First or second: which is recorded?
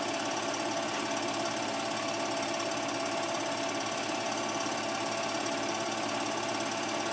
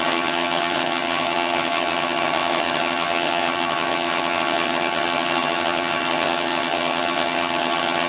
first